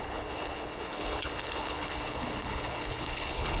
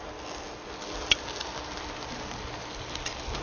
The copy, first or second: first